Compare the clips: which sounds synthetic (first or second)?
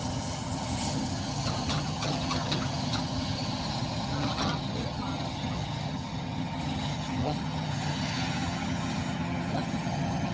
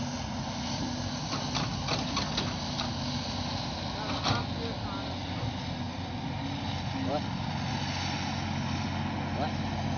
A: first